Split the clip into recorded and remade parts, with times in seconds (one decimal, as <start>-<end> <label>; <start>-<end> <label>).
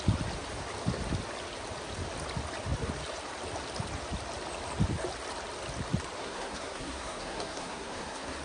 0.0-6.2 recorded; 6.2-8.4 remade